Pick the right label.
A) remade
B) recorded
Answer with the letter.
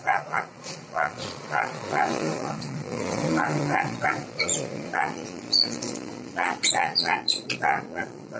A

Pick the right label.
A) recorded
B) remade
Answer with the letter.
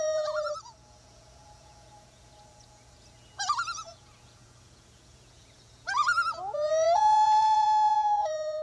B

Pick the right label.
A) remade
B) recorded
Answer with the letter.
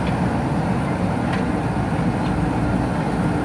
B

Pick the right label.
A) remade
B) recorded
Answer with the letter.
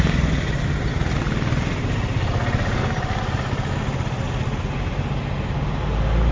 B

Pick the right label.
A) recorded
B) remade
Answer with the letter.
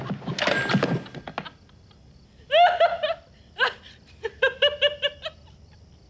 A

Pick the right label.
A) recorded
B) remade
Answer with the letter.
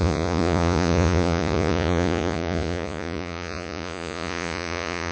B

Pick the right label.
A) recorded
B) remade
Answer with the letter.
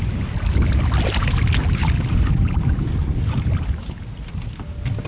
A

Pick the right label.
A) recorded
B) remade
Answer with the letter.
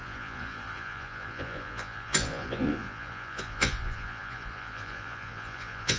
B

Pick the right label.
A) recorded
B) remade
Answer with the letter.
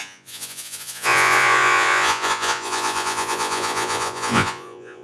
B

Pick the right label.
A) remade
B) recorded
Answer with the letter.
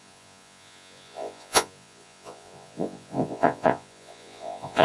A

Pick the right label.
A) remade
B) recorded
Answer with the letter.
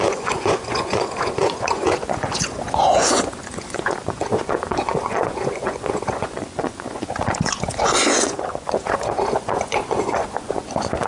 A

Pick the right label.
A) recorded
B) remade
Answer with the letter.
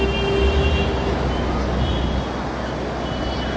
A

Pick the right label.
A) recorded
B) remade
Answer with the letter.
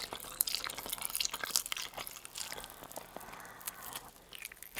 A